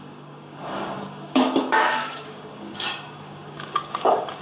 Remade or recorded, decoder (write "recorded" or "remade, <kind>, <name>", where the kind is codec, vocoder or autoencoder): remade, codec, DAC